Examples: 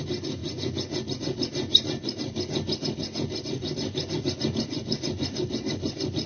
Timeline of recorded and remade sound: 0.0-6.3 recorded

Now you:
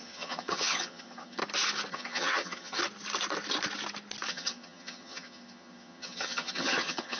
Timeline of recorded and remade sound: 0.0-1.4 remade; 1.4-1.9 recorded; 1.9-2.8 remade; 2.8-4.3 recorded; 4.3-7.2 remade

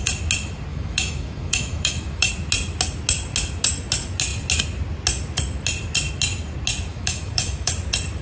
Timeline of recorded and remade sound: 0.0-0.7 recorded; 0.7-2.3 remade; 2.3-6.9 recorded; 6.9-7.7 remade; 7.7-8.2 recorded

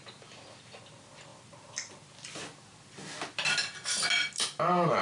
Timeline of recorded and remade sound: 0.0-5.0 recorded

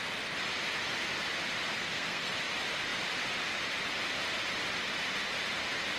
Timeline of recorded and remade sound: 0.0-1.7 recorded; 1.7-2.3 remade; 2.3-6.0 recorded

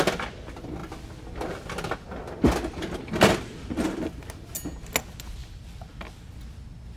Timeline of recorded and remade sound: 0.0-5.4 recorded; 5.4-6.3 remade; 6.3-7.0 recorded

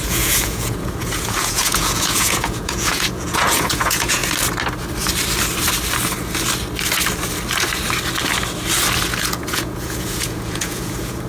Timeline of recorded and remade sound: 0.0-4.2 remade; 4.2-9.2 recorded; 9.2-11.3 remade